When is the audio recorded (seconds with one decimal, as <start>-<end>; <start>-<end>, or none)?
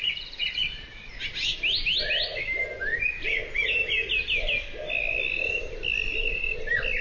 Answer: 1.1-7.0